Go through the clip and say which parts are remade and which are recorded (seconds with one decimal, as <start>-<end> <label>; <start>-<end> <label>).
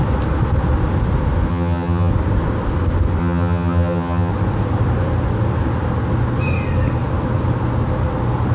0.0-1.5 recorded; 1.5-2.1 remade; 2.1-3.2 recorded; 3.2-4.3 remade; 4.3-8.5 recorded